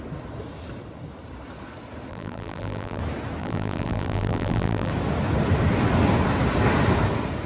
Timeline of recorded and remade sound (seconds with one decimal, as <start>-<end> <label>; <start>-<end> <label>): 0.0-2.1 recorded; 2.1-3.0 remade; 3.0-3.4 recorded; 3.4-4.9 remade; 4.9-7.5 recorded